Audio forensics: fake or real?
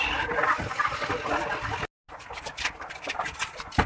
real